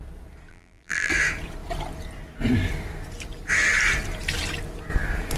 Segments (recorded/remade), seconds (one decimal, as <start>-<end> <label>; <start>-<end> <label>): 0.0-0.5 recorded; 0.5-1.1 remade; 1.1-5.4 recorded